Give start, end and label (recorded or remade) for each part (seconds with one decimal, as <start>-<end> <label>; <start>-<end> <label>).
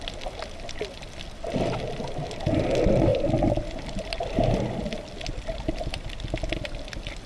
0.0-7.3 recorded